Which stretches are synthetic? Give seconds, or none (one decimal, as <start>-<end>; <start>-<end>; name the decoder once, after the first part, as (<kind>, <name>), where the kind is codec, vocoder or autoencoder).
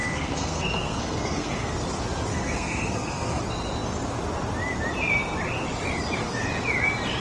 0.0-1.7 (codec, SNAC); 2.3-3.4